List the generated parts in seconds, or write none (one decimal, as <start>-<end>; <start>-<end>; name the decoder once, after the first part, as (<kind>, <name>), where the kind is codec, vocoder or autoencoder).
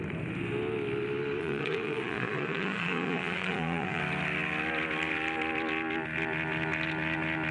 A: 1.4-4.0 (vocoder, Vocos)